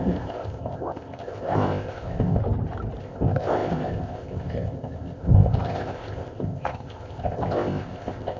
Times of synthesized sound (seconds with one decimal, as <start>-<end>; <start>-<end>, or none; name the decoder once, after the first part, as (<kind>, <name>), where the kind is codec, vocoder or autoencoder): 0.0-2.4 (codec, ZipCodec); 3.0-8.4